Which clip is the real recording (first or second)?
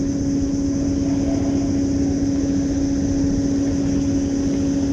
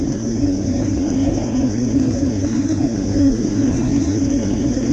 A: first